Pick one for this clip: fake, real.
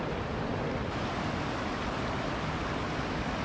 real